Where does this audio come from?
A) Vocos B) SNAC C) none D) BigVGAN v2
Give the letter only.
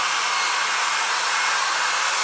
C